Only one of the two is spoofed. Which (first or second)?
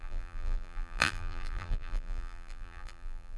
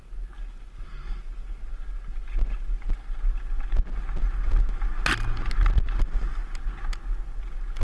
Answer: first